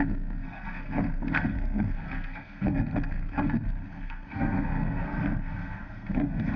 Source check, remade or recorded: remade